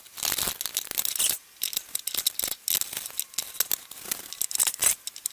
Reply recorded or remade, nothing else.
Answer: recorded